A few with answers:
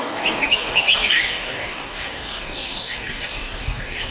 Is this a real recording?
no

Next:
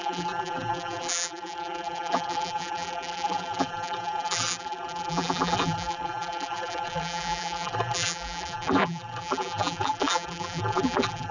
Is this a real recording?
no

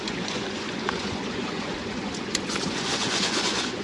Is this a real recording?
no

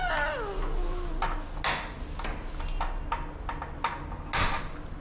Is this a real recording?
yes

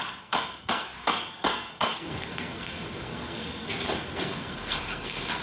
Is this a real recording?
no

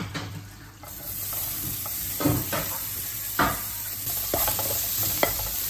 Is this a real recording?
no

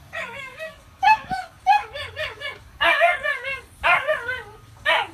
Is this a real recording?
no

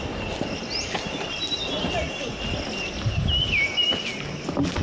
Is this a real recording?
yes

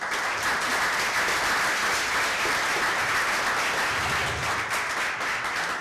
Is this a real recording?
yes